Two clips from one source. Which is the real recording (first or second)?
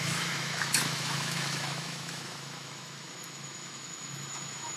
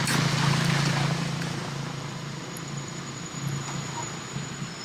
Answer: second